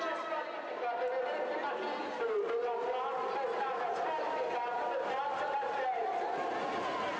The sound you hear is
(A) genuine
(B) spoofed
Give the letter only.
A